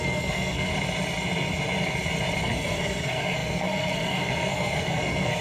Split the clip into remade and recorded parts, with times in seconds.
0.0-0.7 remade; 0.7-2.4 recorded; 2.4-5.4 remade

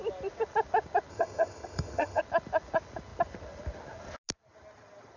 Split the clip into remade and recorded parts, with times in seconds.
0.0-1.1 recorded; 1.1-2.2 remade; 2.2-5.2 recorded

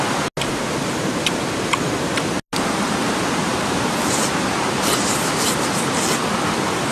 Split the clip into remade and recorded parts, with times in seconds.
0.0-3.4 recorded; 3.4-6.2 remade; 6.2-6.9 recorded

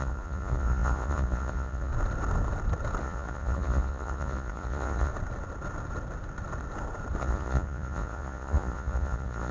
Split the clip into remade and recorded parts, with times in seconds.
0.0-1.9 remade; 1.9-3.0 recorded; 3.0-5.1 remade; 5.1-7.2 recorded; 7.2-9.5 remade

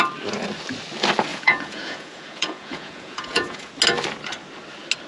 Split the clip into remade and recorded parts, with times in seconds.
0.0-1.3 recorded; 1.3-3.7 remade; 3.7-5.1 recorded

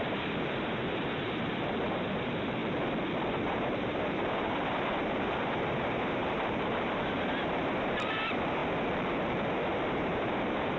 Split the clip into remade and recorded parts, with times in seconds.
0.0-2.6 remade; 2.6-3.3 recorded; 3.3-8.6 remade; 8.6-9.9 recorded; 9.9-10.8 remade

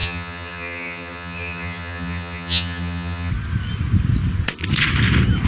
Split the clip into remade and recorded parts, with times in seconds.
0.0-3.3 remade; 3.3-5.5 recorded